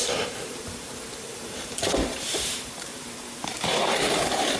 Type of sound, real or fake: fake